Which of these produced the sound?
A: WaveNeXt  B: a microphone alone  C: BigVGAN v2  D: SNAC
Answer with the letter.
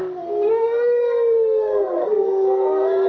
D